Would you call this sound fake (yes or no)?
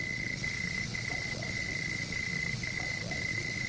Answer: yes